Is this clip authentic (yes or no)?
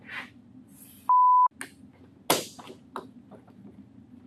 yes